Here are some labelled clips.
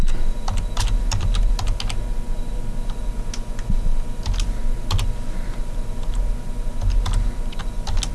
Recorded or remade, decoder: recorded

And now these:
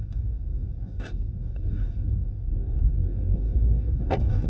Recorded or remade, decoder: remade, codec, DAC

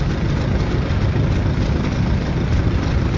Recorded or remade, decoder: recorded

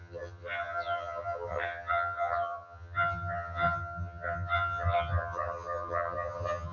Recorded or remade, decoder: remade, vocoder, HiFi-GAN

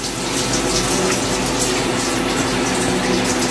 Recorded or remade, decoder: recorded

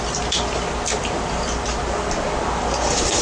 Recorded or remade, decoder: remade, vocoder, BigVGAN v2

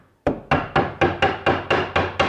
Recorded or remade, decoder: recorded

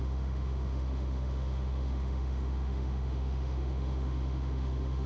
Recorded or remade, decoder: remade, autoencoder, DAC-VAE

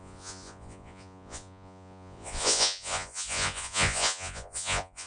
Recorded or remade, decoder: remade, vocoder, Vocos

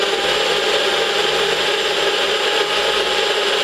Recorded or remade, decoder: recorded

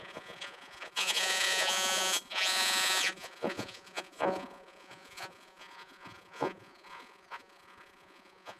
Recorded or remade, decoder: remade, vocoder, Vocos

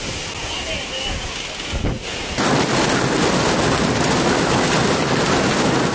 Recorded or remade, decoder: recorded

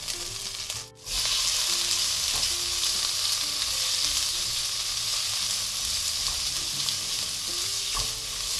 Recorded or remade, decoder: recorded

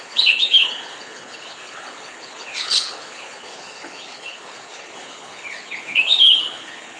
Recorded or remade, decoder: remade, codec, HILCodec